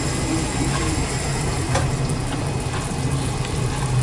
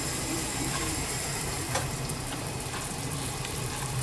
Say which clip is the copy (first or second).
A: second